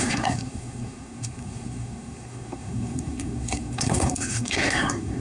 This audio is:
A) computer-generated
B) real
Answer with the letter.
A